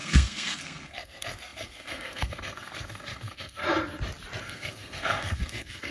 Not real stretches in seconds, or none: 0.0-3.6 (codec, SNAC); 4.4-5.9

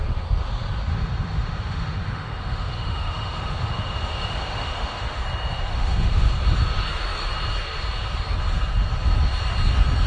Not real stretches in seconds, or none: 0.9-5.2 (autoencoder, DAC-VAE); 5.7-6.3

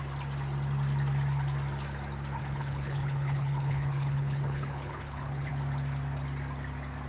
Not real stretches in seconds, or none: 2.4-5.5 (codec, HILCodec)